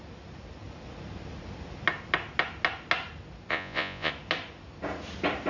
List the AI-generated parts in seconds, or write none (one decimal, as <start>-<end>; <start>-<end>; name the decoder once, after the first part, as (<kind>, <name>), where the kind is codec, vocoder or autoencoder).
3.5-4.1 (vocoder, Vocos)